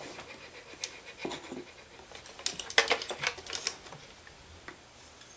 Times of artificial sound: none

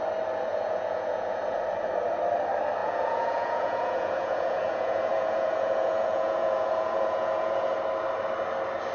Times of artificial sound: 0.5-1.6; 2.8-7.8

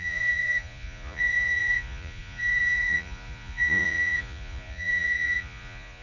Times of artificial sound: 0.0-6.0

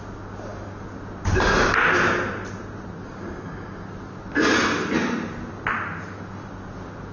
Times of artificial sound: none

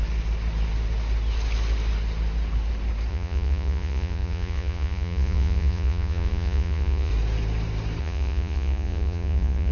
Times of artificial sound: 3.1-7.1; 8.0-9.7

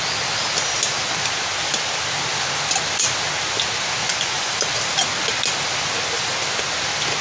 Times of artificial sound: 4.0-4.5